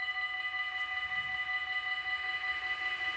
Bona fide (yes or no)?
yes